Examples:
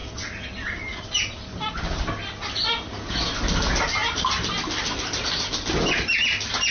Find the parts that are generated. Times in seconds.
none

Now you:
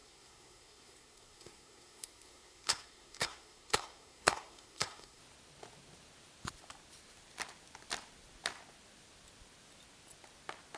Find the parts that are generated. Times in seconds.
0.0-5.2 (codec, SNAC)